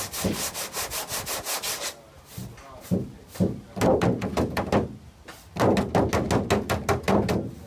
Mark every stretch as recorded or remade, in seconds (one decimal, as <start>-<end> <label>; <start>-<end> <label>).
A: 0.0-7.7 recorded